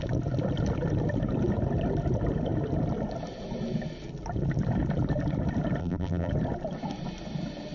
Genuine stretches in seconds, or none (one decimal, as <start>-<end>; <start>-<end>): 0.0-5.8; 6.3-7.7